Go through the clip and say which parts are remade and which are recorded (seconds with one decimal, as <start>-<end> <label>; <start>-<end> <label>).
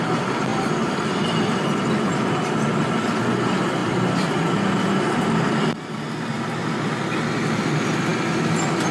0.0-8.9 recorded